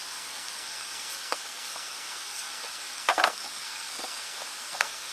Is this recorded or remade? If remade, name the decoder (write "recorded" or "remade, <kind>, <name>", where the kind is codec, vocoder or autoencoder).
remade, codec, SNAC